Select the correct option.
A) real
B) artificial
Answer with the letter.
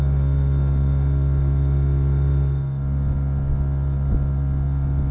A